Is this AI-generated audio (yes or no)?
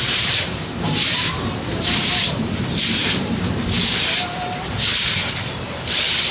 yes